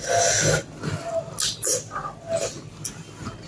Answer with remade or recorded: recorded